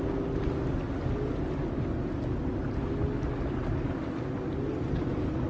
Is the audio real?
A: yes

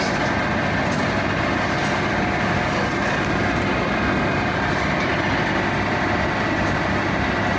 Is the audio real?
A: yes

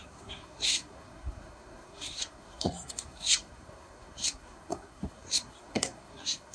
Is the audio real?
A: no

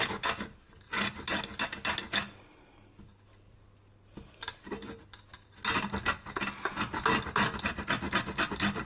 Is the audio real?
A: yes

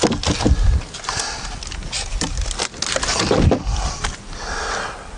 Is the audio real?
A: yes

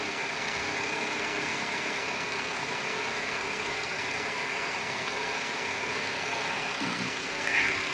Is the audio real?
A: no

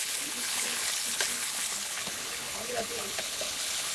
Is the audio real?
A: no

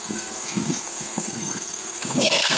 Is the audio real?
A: no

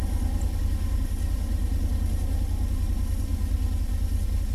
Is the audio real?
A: yes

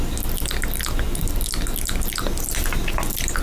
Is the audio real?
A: yes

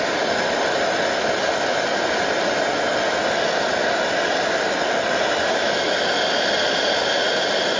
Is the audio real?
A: yes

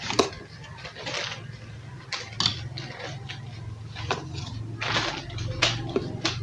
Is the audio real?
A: yes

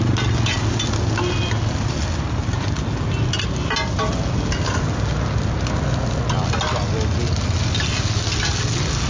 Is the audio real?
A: yes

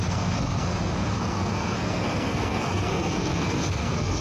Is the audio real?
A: no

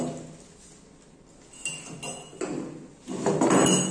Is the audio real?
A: yes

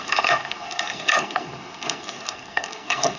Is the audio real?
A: no